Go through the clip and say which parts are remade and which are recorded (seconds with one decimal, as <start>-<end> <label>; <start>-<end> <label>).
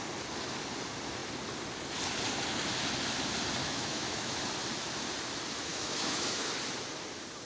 0.0-3.6 recorded; 3.6-4.4 remade; 4.4-5.7 recorded; 5.7-6.5 remade; 6.5-7.5 recorded